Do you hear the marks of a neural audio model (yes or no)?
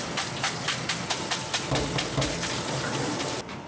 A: no